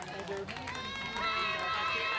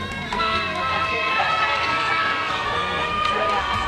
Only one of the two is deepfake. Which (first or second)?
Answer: second